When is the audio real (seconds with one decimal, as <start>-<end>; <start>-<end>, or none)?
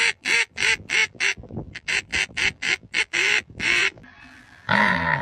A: none